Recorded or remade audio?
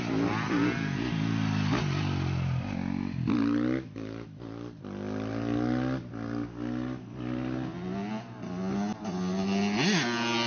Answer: recorded